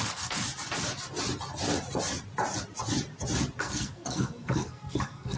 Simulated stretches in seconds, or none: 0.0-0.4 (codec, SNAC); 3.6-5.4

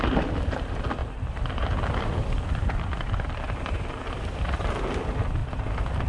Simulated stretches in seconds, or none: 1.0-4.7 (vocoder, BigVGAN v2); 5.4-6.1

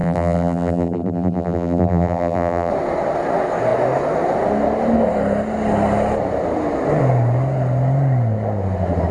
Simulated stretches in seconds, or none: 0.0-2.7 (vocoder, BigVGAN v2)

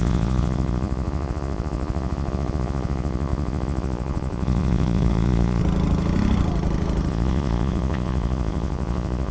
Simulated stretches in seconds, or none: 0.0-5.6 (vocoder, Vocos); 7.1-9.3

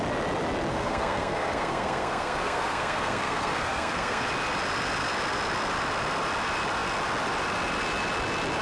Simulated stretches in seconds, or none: 0.7-4.3 (codec, SNAC)

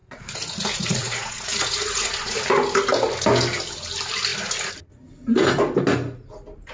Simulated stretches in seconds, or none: 0.0-2.5 (vocoder, Vocos)

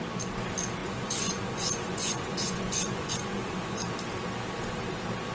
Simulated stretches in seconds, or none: 0.8-3.8 (vocoder, Vocos)

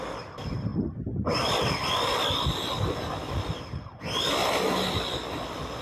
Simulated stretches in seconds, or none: none